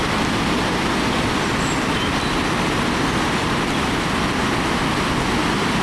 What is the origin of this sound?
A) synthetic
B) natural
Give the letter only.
B